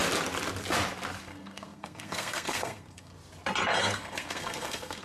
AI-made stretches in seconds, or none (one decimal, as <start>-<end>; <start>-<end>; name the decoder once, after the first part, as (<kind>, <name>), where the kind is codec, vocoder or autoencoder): 1.2-3.1 (codec, SNAC); 3.8-5.0